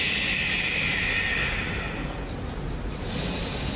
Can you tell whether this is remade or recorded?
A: recorded